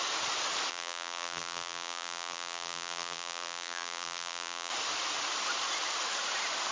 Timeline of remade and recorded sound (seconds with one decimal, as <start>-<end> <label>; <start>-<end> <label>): 0.0-0.7 recorded; 0.7-4.7 remade; 4.7-6.7 recorded